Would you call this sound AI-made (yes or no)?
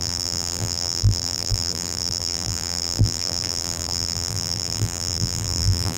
yes